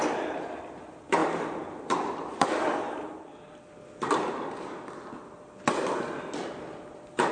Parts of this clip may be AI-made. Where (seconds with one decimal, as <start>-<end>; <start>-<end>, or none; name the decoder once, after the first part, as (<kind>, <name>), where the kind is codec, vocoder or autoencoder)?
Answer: none